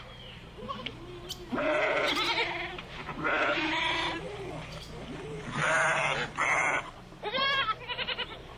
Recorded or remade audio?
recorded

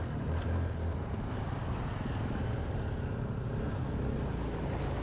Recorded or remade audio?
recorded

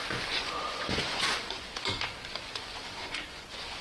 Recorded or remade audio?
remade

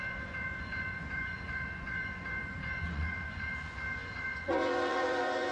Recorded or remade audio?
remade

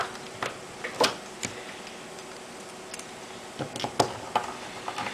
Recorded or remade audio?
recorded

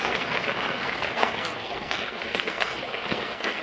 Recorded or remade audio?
remade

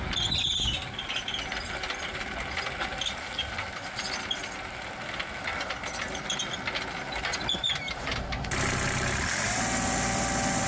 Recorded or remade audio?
recorded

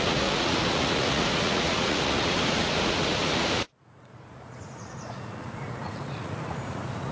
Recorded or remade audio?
remade